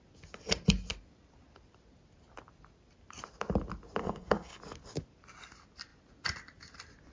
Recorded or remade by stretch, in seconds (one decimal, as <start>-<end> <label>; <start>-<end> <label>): 0.0-4.0 recorded; 4.0-4.6 remade; 4.6-7.1 recorded